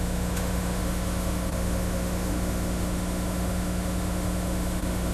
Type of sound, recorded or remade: remade